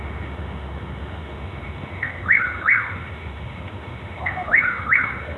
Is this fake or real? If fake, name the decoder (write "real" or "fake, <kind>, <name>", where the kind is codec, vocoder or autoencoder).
fake, autoencoder, DAC-VAE